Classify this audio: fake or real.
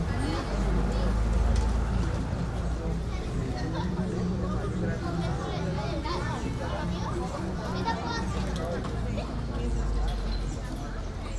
real